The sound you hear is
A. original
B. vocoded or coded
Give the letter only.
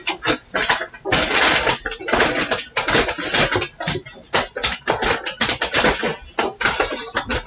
A